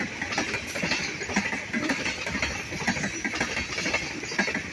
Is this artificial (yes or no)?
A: no